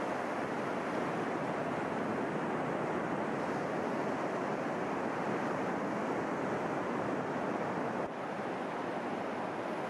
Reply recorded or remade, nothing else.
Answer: recorded